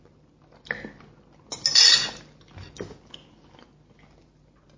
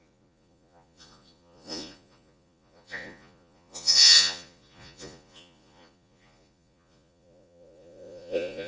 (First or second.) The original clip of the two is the first